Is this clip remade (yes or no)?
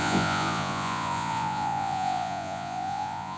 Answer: yes